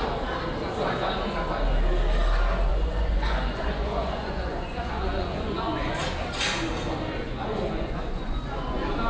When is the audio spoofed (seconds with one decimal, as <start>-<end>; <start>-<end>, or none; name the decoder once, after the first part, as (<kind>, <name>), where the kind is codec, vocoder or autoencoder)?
2.7-5.9 (vocoder, Vocos); 7.2-9.1